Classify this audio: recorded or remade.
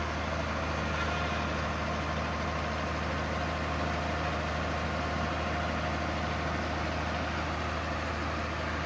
recorded